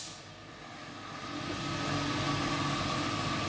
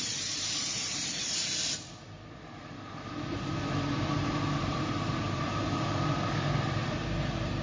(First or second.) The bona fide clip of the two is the first